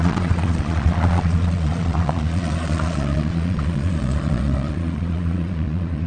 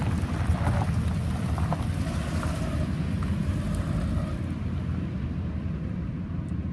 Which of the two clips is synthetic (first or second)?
first